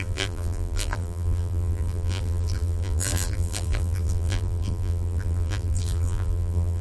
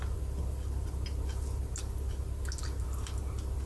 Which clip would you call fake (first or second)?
first